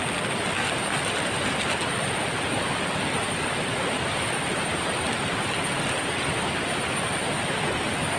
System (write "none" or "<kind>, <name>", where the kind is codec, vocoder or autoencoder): none